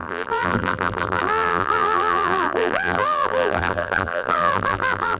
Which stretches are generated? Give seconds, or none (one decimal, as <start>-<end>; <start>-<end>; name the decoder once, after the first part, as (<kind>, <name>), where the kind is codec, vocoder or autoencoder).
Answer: 0.0-5.2 (vocoder, BigVGAN v2)

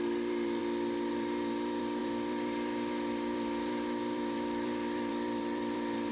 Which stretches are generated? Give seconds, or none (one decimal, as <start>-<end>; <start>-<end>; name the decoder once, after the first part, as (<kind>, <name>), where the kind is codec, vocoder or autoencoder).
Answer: 0.0-0.6 (vocoder, BigVGAN v2); 1.1-6.1

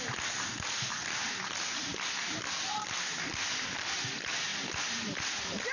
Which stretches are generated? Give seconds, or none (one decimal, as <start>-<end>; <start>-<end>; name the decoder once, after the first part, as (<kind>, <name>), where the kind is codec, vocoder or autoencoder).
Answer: none

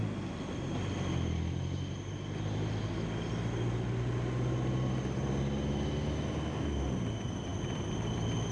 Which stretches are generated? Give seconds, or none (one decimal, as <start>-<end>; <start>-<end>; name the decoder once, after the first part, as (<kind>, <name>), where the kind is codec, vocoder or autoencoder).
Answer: none